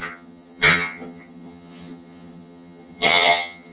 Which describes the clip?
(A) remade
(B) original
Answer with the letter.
A